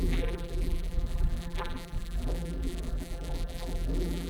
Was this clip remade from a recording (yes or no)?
yes